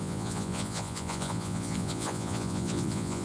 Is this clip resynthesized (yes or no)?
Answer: yes